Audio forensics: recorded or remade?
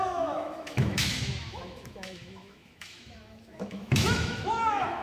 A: remade